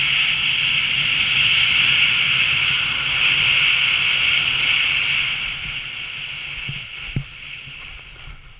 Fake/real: real